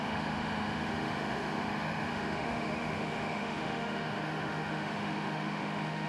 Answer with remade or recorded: remade